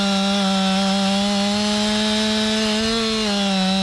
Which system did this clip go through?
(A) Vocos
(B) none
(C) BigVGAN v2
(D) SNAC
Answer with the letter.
B